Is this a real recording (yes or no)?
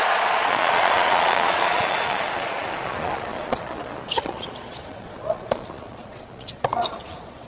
no